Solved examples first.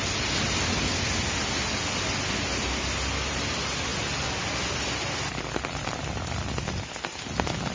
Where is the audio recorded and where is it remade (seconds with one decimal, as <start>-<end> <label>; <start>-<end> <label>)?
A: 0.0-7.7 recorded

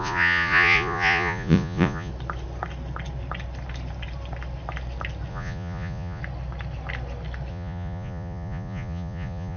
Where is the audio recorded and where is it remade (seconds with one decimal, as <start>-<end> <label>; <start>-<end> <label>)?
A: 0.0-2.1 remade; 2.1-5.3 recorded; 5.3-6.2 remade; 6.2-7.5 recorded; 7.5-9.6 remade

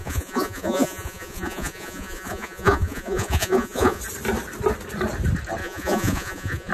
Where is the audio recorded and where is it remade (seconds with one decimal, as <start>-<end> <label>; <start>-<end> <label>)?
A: 0.0-4.0 remade; 4.0-5.6 recorded; 5.6-6.7 remade

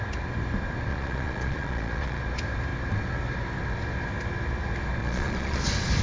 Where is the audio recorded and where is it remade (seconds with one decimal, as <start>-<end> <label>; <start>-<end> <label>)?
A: 0.0-0.9 recorded; 0.9-2.2 remade; 2.2-5.0 recorded; 5.0-5.6 remade; 5.6-6.0 recorded

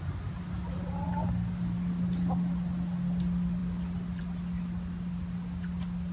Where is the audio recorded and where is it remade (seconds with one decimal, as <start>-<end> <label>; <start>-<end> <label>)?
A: 0.0-6.1 recorded

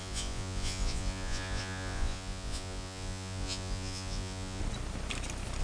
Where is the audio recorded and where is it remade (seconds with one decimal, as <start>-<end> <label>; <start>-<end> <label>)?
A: 0.0-4.6 remade; 4.6-5.6 recorded

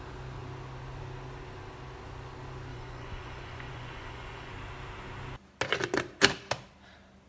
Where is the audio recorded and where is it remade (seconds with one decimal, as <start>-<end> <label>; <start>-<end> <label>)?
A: 0.0-2.7 recorded; 2.7-4.5 remade; 4.5-7.3 recorded